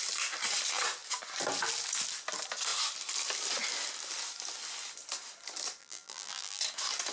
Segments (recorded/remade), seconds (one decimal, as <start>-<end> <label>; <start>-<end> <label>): 0.0-5.8 recorded; 5.8-6.6 remade; 6.6-7.1 recorded